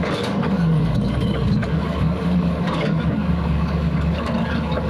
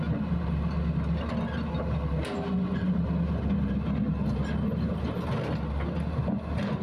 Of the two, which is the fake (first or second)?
first